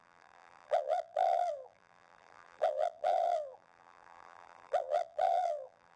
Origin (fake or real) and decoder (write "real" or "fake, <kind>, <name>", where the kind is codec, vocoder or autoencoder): fake, vocoder, BigVGAN v2